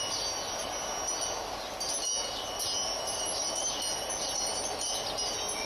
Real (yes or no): yes